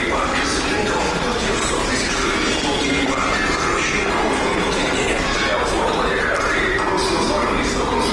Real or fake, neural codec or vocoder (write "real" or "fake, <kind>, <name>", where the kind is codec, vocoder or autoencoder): real